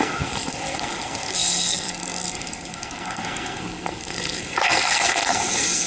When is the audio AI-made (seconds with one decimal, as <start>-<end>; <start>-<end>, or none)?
0.0-5.9